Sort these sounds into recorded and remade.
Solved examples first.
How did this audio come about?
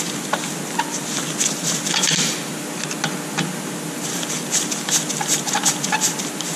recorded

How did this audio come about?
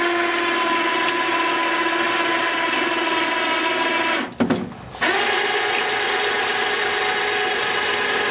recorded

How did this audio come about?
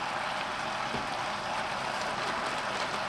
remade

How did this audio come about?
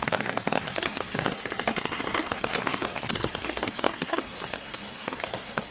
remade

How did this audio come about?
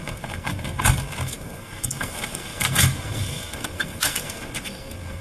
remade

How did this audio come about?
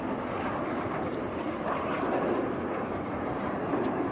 recorded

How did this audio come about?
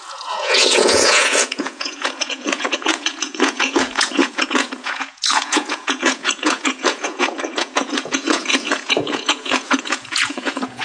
remade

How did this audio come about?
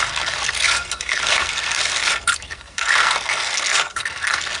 remade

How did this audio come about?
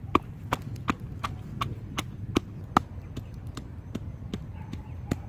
recorded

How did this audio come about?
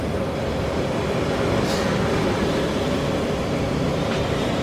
recorded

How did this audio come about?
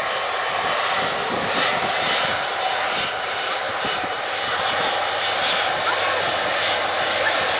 recorded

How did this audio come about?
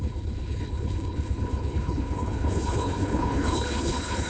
remade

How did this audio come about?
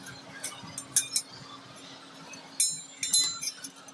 recorded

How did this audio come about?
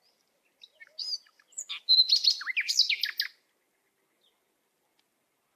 recorded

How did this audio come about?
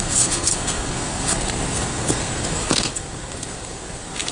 remade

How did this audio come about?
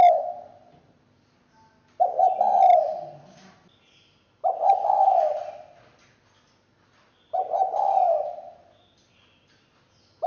recorded